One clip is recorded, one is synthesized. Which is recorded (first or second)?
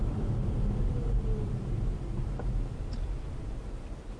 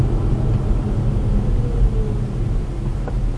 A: second